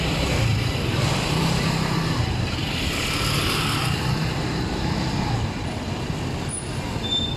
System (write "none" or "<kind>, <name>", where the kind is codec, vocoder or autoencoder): none